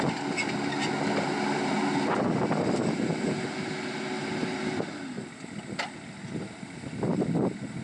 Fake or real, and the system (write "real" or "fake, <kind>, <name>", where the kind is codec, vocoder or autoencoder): real